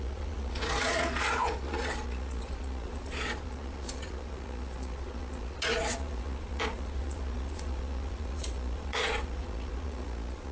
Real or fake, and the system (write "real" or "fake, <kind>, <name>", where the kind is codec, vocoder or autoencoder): fake, vocoder, Vocos